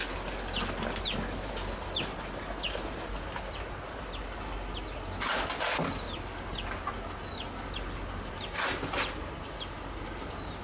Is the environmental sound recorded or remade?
recorded